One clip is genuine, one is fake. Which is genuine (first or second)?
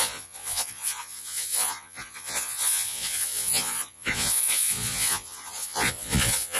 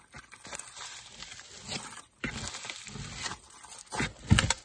second